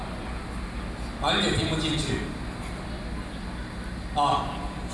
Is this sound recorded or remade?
recorded